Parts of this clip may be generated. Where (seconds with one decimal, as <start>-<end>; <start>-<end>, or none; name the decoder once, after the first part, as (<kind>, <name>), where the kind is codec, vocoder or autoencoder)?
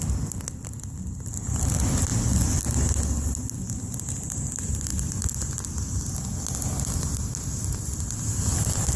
none